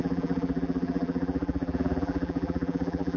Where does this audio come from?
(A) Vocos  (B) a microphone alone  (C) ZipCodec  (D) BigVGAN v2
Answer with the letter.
D